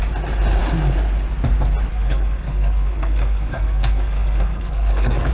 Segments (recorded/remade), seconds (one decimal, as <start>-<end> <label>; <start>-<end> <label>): 0.0-1.9 recorded; 1.9-5.3 remade